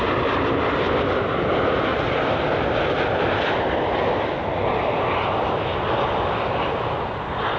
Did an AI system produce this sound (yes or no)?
no